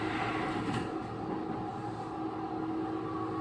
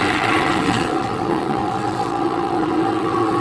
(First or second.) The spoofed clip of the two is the second